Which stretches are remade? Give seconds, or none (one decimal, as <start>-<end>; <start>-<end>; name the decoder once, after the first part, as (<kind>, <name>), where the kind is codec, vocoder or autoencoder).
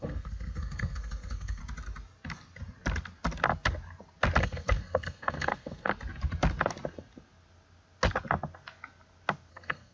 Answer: 0.0-1.6 (codec, SNAC); 4.4-5.9; 9.5-9.9